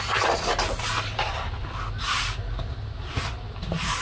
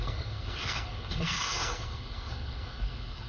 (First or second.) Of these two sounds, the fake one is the second